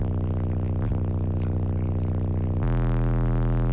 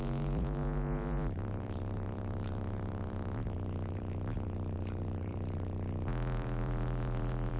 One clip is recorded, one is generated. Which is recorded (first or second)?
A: first